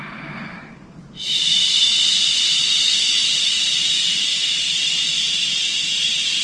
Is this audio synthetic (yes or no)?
yes